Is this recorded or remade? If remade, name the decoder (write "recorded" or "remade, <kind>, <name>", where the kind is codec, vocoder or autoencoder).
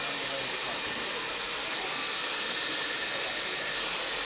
recorded